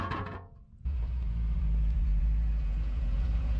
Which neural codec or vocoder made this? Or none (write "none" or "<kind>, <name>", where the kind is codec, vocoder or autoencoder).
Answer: vocoder, Vocos